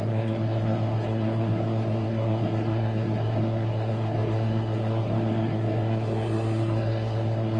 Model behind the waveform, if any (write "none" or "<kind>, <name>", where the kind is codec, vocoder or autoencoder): codec, SNAC